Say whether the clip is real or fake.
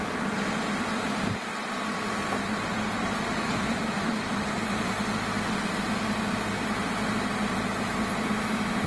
fake